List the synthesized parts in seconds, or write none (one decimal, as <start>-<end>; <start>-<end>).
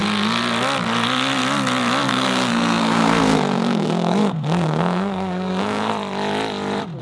2.1-5.9